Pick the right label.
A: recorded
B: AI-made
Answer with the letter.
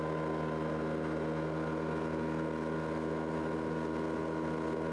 A